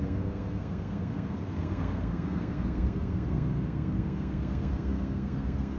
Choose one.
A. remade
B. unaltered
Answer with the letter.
A